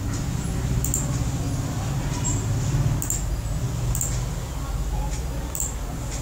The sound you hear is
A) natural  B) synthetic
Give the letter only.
A